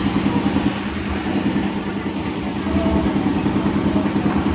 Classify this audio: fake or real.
real